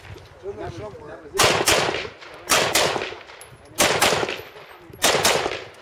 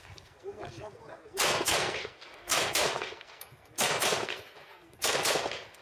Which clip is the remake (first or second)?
second